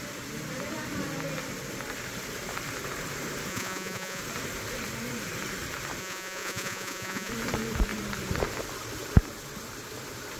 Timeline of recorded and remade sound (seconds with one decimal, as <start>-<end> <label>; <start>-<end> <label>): 0.0-3.5 recorded; 3.5-4.2 remade; 4.2-6.0 recorded; 6.0-7.3 remade; 7.3-10.4 recorded